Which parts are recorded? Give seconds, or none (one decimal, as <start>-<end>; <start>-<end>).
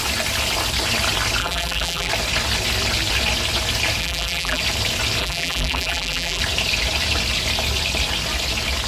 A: 0.0-1.4; 2.1-4.0; 4.6-5.2; 6.4-8.9